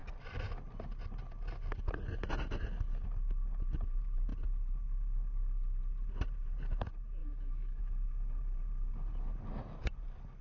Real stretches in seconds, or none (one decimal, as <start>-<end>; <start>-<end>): 0.0-7.2; 7.8-10.4